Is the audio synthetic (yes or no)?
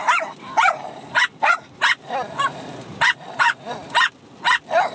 yes